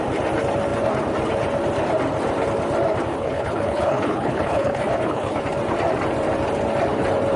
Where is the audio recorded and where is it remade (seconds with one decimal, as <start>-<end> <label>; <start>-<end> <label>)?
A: 0.0-3.1 recorded; 3.1-5.4 remade; 5.4-7.4 recorded